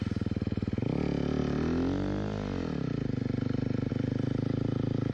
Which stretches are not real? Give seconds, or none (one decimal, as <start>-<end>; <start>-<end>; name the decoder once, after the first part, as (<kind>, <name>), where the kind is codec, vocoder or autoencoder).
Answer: none